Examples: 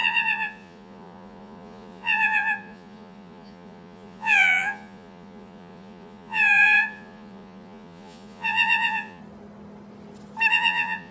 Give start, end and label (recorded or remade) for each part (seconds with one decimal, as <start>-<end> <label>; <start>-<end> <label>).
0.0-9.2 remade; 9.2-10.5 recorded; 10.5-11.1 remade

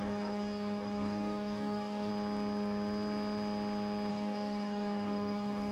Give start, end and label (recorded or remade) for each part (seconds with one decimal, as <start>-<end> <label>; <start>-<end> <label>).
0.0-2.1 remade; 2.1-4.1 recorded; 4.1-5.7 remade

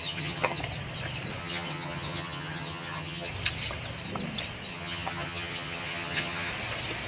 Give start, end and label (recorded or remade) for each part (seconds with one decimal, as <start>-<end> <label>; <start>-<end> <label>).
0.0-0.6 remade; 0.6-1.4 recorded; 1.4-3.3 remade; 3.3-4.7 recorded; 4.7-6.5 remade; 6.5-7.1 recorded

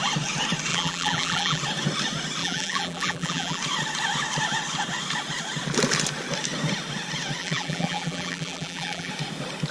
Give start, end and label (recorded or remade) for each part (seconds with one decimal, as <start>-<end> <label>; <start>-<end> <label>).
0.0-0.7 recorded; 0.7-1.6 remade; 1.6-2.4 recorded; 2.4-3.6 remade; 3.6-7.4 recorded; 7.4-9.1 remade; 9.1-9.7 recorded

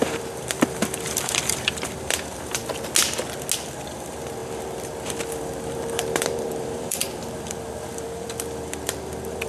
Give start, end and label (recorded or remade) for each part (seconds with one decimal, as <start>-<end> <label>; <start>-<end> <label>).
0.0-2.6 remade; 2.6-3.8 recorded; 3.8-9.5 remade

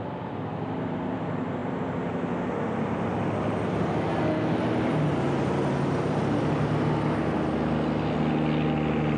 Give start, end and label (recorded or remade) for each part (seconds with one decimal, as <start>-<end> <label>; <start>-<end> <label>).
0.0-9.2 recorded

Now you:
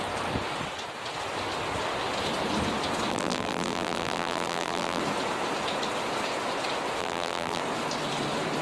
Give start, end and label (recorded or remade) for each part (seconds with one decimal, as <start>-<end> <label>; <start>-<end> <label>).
0.0-3.1 recorded; 3.1-5.0 remade; 5.0-7.0 recorded; 7.0-7.6 remade; 7.6-8.6 recorded